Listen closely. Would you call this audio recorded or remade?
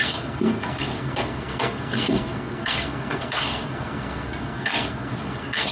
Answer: remade